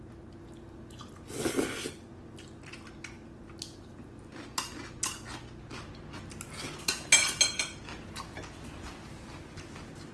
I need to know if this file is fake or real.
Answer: real